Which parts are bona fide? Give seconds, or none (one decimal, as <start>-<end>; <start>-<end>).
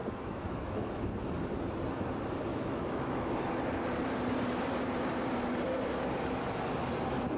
1.1-2.5; 3.5-7.4